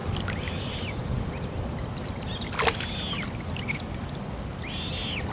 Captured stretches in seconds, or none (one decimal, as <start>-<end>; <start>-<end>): 0.0-5.3